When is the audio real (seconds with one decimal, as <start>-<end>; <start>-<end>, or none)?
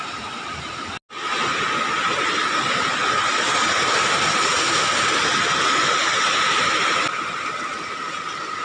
0.0-8.6